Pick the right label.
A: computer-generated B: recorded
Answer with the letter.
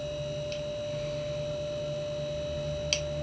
B